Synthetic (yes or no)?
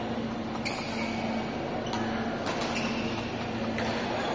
no